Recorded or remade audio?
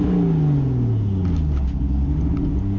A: recorded